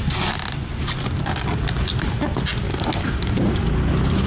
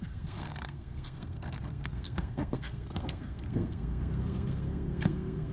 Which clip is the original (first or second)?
first